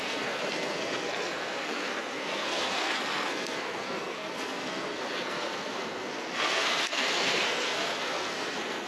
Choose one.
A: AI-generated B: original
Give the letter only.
A